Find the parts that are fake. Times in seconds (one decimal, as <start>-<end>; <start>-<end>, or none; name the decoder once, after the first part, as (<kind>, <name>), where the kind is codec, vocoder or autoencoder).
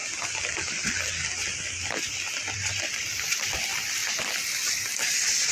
2.1-3.6 (vocoder, BigVGAN v2)